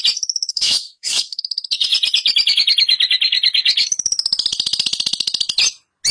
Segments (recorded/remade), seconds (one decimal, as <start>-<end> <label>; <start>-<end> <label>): 0.0-0.5 recorded; 0.5-1.4 remade; 1.4-6.1 recorded